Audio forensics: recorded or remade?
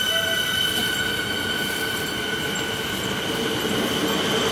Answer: recorded